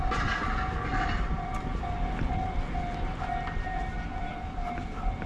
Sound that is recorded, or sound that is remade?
recorded